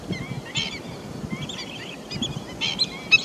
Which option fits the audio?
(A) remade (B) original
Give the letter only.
B